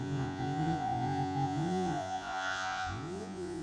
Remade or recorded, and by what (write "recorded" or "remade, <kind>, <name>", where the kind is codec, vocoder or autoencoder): remade, vocoder, Vocos